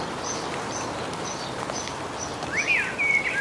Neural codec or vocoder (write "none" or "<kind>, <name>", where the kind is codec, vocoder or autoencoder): none